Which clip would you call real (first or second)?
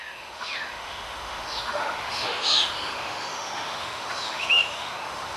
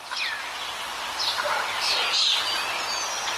second